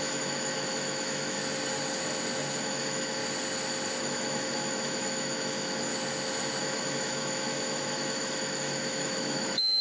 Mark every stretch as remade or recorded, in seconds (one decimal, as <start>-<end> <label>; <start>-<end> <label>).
0.0-1.4 remade; 1.4-2.6 recorded; 2.6-3.2 remade; 3.2-4.0 recorded; 4.0-5.9 remade; 5.9-6.6 recorded; 6.6-9.8 remade

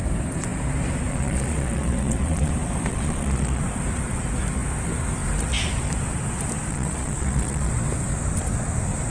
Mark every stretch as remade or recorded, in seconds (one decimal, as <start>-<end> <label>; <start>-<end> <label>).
0.0-1.1 recorded; 1.1-2.5 remade; 2.5-2.9 recorded; 2.9-3.6 remade; 3.6-6.7 recorded; 6.7-7.7 remade; 7.7-9.1 recorded